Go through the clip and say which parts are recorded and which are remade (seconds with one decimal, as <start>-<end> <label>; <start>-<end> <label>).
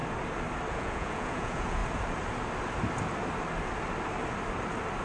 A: 0.0-0.7 recorded; 0.7-1.8 remade; 1.8-5.0 recorded